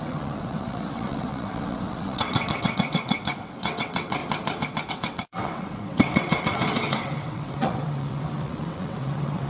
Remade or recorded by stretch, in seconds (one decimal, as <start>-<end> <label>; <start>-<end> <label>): 0.0-4.2 remade; 4.2-4.9 recorded; 4.9-9.5 remade